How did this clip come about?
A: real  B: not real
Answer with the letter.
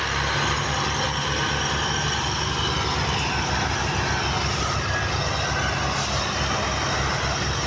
A